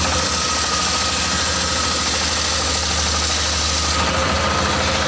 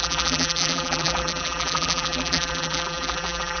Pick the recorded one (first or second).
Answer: first